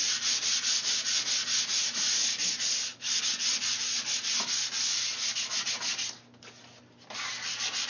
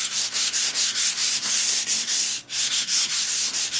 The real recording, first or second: first